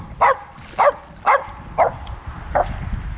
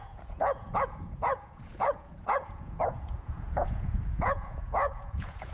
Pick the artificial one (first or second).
second